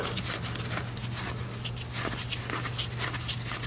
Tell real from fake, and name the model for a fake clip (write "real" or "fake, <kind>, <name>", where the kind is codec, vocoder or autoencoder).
real